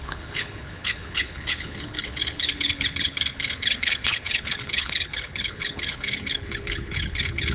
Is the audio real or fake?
fake